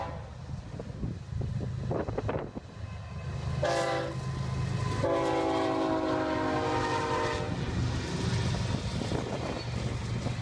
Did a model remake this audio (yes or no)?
no